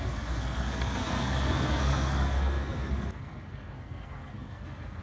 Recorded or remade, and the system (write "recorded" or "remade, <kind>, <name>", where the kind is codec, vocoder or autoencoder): remade, codec, SNAC